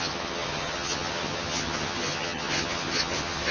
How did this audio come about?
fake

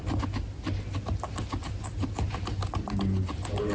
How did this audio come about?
real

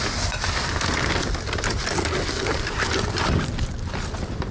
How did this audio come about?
real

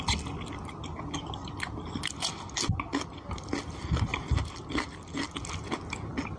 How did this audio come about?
real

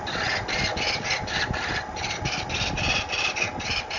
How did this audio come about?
real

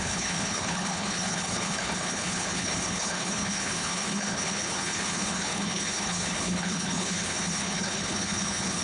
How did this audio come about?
fake